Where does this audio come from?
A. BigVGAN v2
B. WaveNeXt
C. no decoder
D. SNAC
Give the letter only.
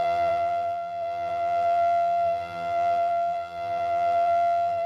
A